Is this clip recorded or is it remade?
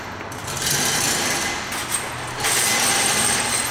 recorded